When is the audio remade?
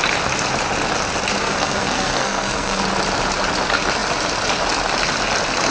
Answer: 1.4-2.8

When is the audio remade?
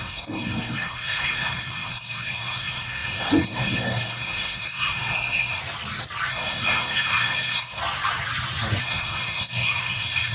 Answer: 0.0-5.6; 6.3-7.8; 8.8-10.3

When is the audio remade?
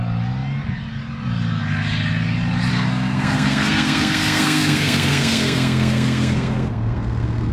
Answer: 2.7-7.5